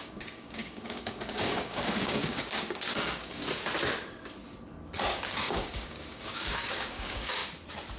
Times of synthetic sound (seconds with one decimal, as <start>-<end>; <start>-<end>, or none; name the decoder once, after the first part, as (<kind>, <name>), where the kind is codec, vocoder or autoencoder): 0.0-3.4 (codec, DAC); 5.1-7.4